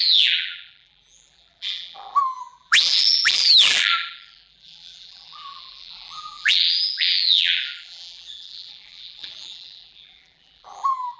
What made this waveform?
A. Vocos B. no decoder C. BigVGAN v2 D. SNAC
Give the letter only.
C